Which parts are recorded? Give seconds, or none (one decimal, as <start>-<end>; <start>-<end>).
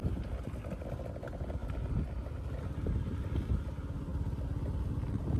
0.0-5.4